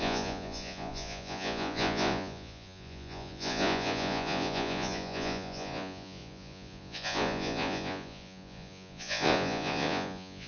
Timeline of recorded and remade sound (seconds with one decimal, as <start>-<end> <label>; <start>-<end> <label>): 0.0-10.5 remade